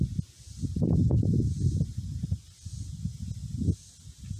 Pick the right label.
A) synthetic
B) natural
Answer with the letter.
B